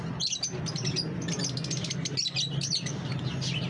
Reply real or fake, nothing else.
real